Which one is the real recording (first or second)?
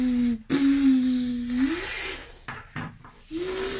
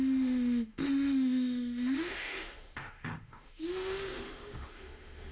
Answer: first